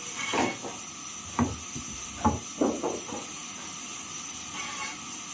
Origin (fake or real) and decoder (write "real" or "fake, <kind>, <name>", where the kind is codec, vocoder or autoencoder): real